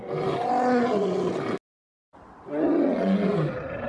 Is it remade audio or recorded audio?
recorded